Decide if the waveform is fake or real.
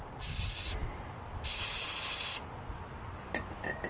real